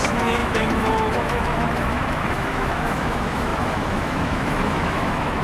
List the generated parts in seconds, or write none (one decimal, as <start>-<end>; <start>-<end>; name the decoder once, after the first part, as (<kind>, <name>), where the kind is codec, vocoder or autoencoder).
0.0-5.4 (autoencoder, DAC-VAE)